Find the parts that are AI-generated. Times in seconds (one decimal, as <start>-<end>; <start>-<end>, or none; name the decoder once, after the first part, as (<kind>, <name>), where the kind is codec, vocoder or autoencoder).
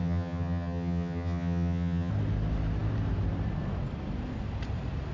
0.0-2.1 (vocoder, HiFi-GAN)